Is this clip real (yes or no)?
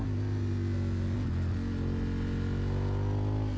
yes